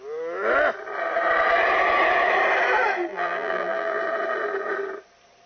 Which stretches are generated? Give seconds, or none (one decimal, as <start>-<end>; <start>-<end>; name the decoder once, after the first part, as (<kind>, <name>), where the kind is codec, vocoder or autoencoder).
3.1-4.0 (vocoder, BigVGAN v2)